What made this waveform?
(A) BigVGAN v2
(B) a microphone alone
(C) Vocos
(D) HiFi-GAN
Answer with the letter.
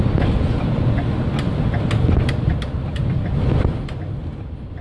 B